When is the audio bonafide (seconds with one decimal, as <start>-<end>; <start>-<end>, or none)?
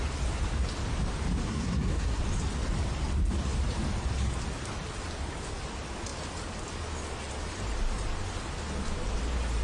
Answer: 0.0-1.4; 2.2-9.6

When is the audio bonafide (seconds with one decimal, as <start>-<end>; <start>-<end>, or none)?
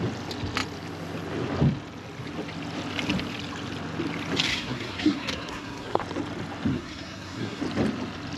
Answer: 0.0-4.5; 6.0-6.7; 7.6-8.4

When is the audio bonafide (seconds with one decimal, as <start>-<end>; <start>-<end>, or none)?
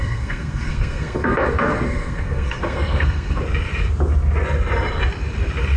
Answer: 3.4-5.8